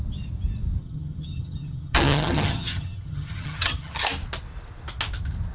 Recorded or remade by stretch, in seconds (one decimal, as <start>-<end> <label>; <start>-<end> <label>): 0.0-0.8 recorded; 0.8-4.0 remade; 4.0-5.5 recorded